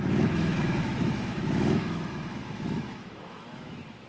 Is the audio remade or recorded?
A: remade